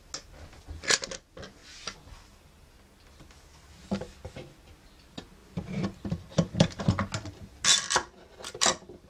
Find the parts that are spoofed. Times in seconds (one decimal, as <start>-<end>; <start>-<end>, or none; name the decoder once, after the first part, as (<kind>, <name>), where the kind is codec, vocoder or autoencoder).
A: 5.4-6.8 (vocoder, BigVGAN v2); 7.7-9.1